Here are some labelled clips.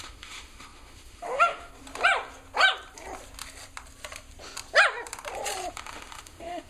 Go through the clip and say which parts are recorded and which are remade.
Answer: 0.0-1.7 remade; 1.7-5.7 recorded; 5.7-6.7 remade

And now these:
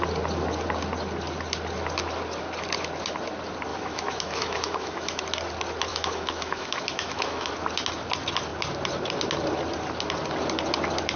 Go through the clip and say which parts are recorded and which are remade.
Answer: 0.0-3.7 recorded; 3.7-5.2 remade; 5.2-5.9 recorded; 5.9-7.5 remade; 7.5-11.2 recorded

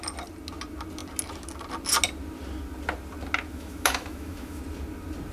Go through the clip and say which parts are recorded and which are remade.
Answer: 0.0-3.5 recorded; 3.5-4.6 remade; 4.6-5.3 recorded

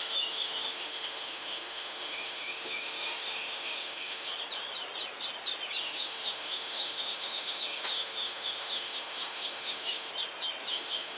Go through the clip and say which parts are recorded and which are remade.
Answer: 0.0-4.3 remade; 4.3-5.8 recorded; 5.8-10.1 remade; 10.1-10.7 recorded; 10.7-11.2 remade

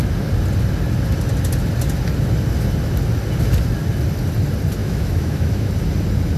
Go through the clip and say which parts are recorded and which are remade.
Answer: 0.0-4.8 recorded; 4.8-5.7 remade; 5.7-6.4 recorded